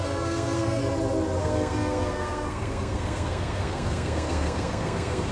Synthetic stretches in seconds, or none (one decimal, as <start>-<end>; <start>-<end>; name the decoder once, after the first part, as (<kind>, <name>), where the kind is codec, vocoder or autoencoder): 0.0-0.8 (codec, SNAC); 1.4-5.3